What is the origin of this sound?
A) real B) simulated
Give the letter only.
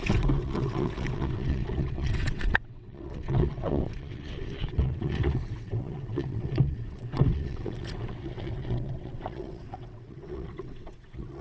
B